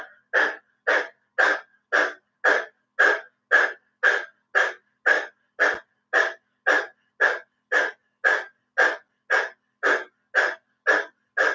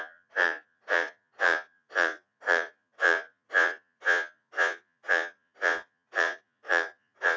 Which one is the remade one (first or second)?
second